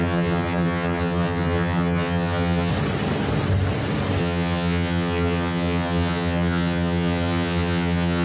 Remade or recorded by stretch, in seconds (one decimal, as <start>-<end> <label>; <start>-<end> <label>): 0.0-2.7 remade; 2.7-4.2 recorded; 4.2-8.2 remade